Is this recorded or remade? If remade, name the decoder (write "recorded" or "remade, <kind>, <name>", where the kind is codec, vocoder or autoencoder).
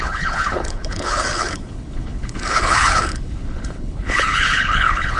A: remade, codec, HILCodec